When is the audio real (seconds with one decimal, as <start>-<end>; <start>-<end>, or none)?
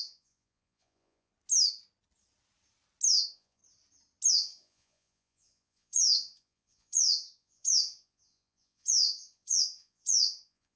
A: 1.3-3.1; 3.6-4.3